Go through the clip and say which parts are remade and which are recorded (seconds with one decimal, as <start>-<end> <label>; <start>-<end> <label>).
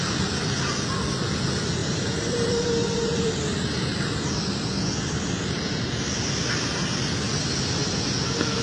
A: 0.0-1.8 recorded; 1.8-3.3 remade; 3.3-8.6 recorded